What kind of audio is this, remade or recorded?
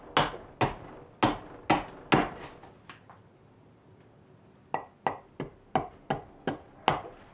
recorded